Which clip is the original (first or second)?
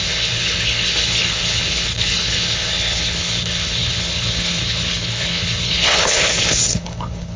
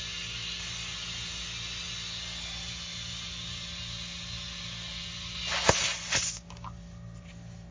second